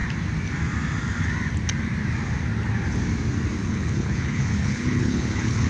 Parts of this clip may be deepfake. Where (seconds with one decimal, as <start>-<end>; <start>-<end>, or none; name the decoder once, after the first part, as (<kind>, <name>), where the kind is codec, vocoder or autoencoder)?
3.6-5.7 (codec, HILCodec)